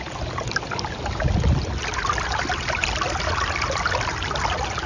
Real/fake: real